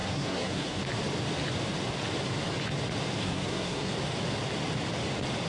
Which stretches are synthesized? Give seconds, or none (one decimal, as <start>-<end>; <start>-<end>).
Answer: 0.0-0.8; 3.2-3.9

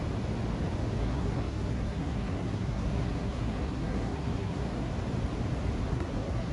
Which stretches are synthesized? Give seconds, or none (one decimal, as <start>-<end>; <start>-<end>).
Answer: 1.0-4.9; 5.9-6.5

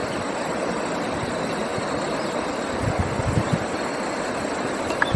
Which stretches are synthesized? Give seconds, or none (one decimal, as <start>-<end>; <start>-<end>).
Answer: 0.0-0.8

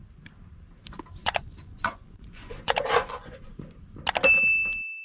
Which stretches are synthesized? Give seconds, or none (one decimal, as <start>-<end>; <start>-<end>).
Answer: 1.2-3.5

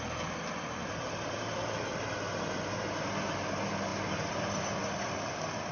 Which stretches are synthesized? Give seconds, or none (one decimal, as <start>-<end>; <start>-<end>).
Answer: none